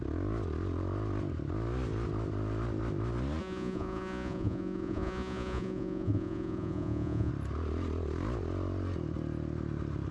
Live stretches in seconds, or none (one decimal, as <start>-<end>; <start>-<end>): 0.0-3.4; 7.3-10.1